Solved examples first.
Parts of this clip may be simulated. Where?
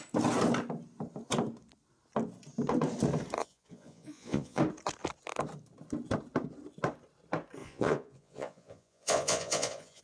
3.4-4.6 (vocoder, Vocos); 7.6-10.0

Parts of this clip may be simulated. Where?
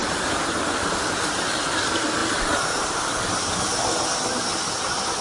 none